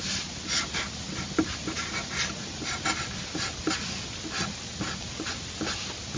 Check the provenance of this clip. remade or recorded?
recorded